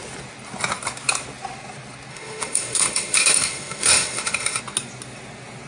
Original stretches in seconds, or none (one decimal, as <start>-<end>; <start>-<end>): 0.0-2.1; 4.6-5.7